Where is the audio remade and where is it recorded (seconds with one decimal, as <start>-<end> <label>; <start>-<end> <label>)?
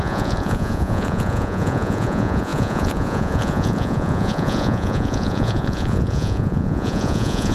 0.0-7.5 remade